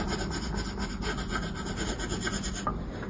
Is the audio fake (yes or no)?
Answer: no